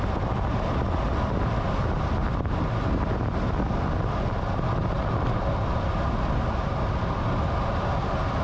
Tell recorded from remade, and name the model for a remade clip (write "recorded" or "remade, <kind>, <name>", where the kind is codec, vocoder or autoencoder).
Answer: recorded